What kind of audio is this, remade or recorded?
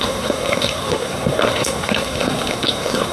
remade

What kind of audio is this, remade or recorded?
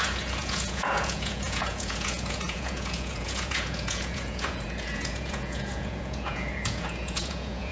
remade